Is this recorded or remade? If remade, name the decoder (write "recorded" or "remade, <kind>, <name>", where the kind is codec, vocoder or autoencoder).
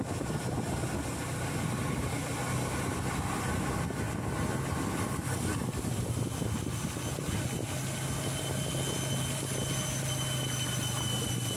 recorded